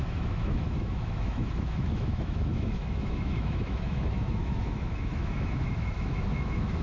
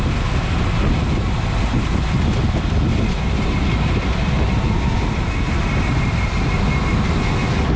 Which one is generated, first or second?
first